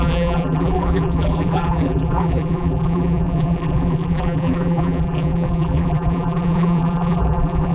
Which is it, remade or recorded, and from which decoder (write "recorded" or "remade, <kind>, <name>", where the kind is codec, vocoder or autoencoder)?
remade, vocoder, BigVGAN v2